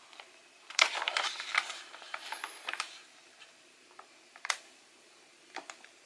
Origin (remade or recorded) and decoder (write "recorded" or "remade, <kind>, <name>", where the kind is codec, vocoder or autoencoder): remade, vocoder, BigVGAN v2